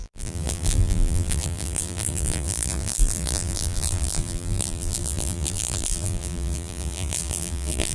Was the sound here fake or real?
fake